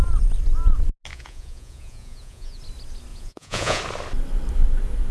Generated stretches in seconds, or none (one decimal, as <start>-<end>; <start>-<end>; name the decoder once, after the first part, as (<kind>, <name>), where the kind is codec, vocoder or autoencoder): 1.1-2.6 (vocoder, Vocos); 3.1-3.8